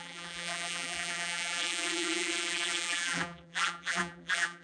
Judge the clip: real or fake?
fake